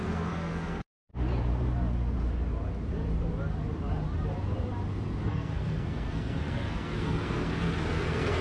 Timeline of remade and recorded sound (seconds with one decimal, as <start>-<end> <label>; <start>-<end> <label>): 0.0-1.1 remade; 1.1-5.2 recorded; 5.2-8.4 remade